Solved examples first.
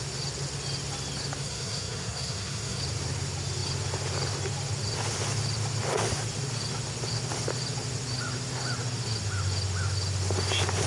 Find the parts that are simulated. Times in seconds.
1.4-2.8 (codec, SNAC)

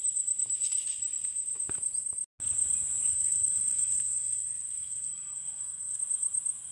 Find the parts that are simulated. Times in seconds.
3.1-6.0 (codec, SNAC)

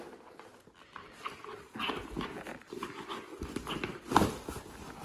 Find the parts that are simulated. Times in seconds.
none

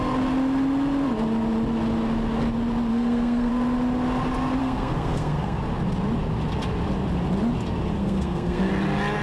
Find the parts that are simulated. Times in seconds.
2.9-3.5 (codec, SNAC); 4.6-5.6; 7.9-8.7

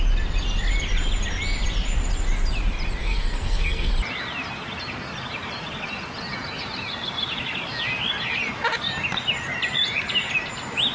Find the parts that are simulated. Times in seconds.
3.0-3.9 (codec, SNAC)

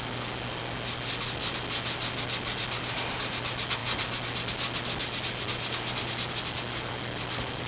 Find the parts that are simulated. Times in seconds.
none

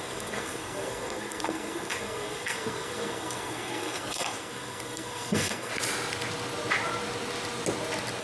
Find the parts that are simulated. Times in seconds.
0.0-5.7 (codec, SNAC)

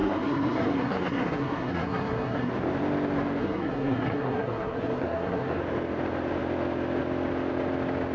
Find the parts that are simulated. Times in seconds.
0.0-2.5 (codec, SNAC); 3.4-5.6